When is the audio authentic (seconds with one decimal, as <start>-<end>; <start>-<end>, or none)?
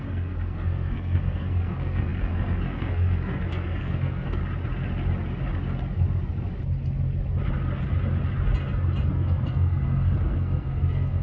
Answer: 4.4-9.1